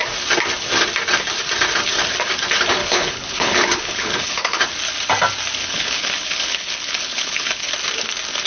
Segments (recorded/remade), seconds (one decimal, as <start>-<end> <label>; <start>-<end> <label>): 0.0-2.8 recorded; 2.8-4.6 remade; 4.6-5.6 recorded; 5.6-7.7 remade; 7.7-8.5 recorded